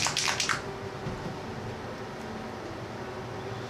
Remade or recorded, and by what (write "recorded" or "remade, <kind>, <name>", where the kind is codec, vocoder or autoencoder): recorded